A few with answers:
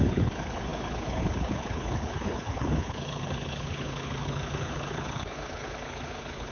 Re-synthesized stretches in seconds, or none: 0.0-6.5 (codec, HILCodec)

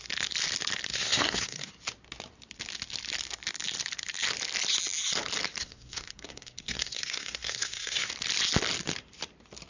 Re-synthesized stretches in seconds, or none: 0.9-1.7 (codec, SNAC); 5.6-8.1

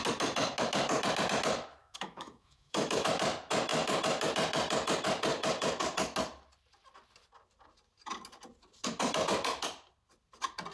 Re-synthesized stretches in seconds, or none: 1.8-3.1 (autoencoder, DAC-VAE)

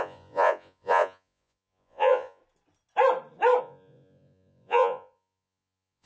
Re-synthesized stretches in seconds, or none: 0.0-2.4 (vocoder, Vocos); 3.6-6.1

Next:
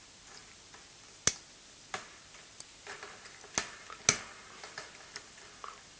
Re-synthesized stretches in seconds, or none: none

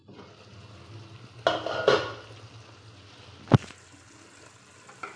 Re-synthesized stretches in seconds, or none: none

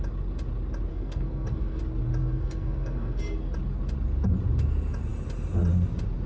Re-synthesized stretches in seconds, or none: 0.9-1.8 (codec, SNAC); 2.2-3.2